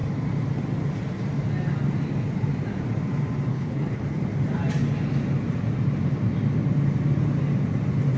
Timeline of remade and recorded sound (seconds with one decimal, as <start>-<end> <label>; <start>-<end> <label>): 0.0-3.5 recorded; 3.5-4.0 remade; 4.0-8.2 recorded